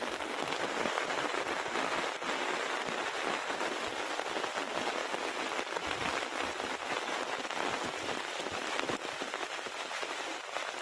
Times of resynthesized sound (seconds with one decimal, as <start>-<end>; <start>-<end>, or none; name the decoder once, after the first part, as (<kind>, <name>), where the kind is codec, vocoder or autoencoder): 0.0-10.8 (vocoder, BigVGAN v2)